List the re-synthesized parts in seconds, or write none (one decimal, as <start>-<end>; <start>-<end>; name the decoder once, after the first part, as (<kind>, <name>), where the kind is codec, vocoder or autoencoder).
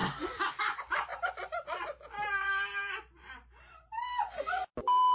0.6-5.1 (vocoder, BigVGAN v2)